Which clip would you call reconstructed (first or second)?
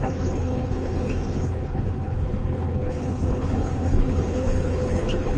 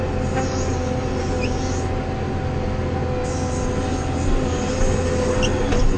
first